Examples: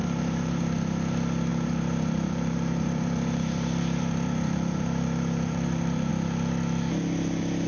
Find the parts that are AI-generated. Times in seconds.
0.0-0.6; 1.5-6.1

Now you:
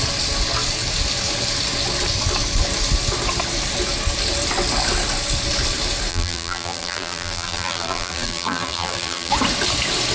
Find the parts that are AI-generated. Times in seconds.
6.1-9.3

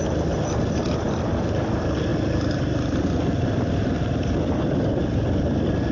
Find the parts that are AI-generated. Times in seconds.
none